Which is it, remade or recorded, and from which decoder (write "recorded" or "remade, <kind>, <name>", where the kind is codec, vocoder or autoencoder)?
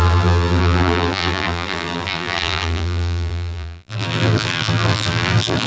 remade, vocoder, BigVGAN v2